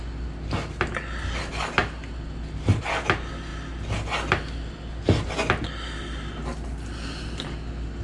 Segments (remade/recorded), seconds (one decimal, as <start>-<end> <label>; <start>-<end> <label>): 0.0-8.0 recorded